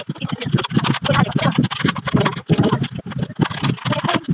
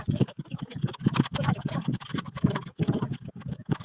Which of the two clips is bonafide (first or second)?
first